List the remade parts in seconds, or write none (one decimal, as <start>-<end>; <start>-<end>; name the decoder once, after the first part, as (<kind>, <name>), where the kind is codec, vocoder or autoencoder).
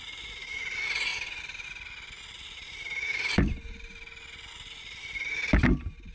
none